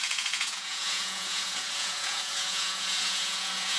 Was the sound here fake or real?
fake